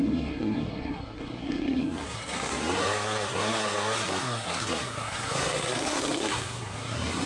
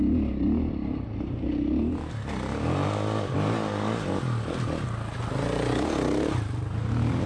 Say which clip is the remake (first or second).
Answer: first